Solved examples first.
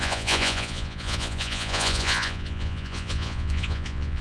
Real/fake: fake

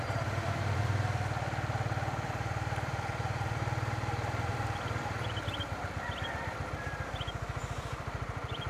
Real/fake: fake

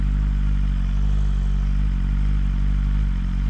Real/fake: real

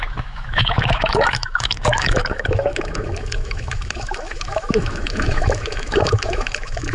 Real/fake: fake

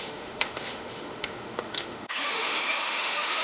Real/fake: fake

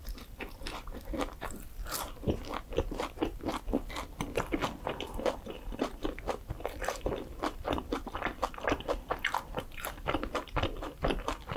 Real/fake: fake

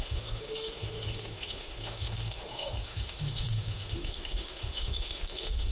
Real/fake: fake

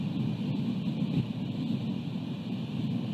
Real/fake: real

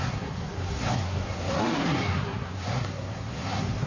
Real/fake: fake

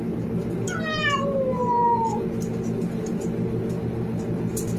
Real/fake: real